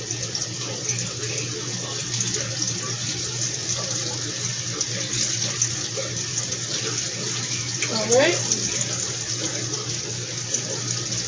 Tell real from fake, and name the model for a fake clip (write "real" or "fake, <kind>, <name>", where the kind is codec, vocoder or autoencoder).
real